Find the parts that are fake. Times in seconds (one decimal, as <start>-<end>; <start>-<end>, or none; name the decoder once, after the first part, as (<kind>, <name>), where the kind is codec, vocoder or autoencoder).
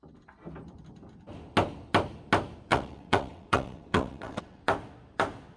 2.7-4.6 (vocoder, WaveNeXt)